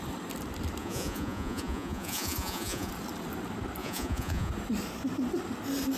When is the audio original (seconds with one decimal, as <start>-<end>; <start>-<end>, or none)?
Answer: 0.0-0.8; 2.9-3.8; 4.5-6.0